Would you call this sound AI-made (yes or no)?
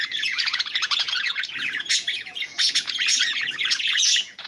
yes